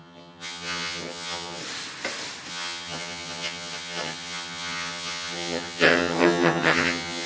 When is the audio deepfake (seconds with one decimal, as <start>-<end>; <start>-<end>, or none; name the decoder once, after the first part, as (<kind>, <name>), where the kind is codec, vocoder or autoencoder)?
0.0-1.6 (vocoder, HiFi-GAN); 2.5-7.3